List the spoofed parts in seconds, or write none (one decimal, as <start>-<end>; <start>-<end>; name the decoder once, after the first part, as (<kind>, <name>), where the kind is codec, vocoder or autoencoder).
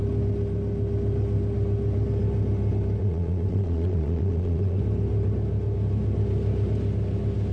3.0-4.8 (vocoder, Vocos)